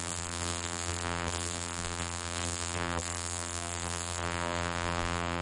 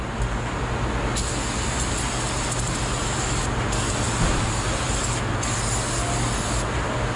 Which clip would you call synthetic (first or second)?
first